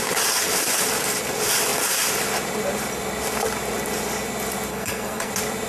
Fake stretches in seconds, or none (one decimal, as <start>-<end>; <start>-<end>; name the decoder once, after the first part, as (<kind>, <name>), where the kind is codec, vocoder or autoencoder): 4.7-5.3 (codec, SNAC)